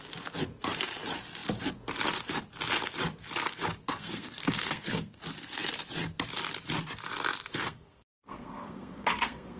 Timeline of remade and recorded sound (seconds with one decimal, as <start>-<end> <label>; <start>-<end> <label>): 0.0-3.9 recorded; 3.9-5.2 remade; 5.2-7.6 recorded; 7.6-9.6 remade

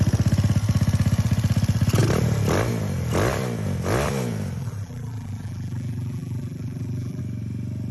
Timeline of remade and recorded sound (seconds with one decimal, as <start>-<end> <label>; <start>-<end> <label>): 0.0-4.6 recorded; 4.6-7.2 remade; 7.2-7.9 recorded

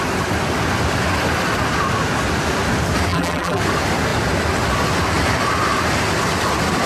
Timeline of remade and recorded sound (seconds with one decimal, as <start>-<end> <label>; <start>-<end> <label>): 0.0-3.1 recorded; 3.1-3.6 remade; 3.6-6.9 recorded

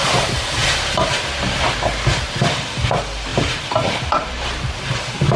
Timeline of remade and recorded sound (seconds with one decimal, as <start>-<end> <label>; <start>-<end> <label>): 0.0-0.6 remade; 0.6-2.5 recorded; 2.5-5.4 remade

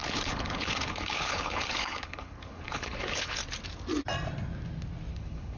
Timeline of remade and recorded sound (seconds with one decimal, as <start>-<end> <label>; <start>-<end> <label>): 0.0-3.4 remade; 3.4-5.1 recorded; 5.1-5.6 remade

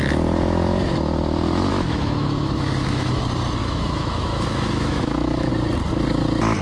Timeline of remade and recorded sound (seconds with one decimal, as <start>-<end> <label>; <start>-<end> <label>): 0.0-1.7 recorded; 1.7-3.1 remade; 3.1-3.6 recorded; 3.6-5.5 remade; 5.5-6.6 recorded